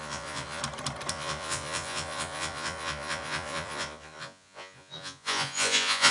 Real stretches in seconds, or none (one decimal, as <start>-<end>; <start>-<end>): 0.6-1.1